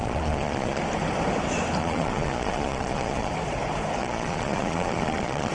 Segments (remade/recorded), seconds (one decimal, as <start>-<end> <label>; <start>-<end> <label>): 0.0-0.8 remade; 0.8-1.8 recorded; 1.8-3.3 remade; 3.3-4.0 recorded; 4.0-5.5 remade